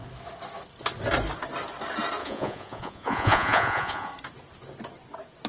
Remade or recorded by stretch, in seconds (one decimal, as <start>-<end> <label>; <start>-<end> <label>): 0.0-2.2 recorded; 2.2-4.1 remade; 4.1-5.5 recorded